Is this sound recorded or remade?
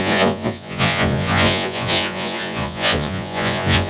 remade